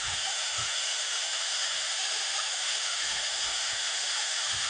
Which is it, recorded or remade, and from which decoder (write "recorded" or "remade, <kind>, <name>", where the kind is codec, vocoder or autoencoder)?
remade, autoencoder, DAC-VAE